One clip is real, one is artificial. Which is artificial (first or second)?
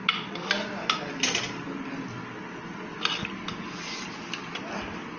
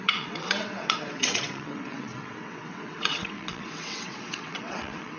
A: second